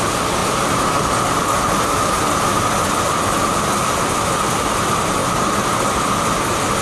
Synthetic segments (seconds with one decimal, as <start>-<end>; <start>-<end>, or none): 0.4-4.0; 5.2-5.7